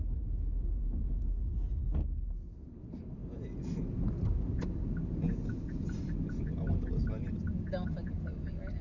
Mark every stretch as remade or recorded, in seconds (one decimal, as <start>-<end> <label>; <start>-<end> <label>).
0.0-8.8 recorded